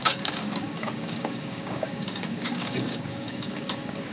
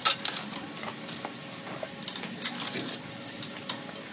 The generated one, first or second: first